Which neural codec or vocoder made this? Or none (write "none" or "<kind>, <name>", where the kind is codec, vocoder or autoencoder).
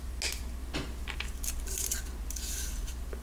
none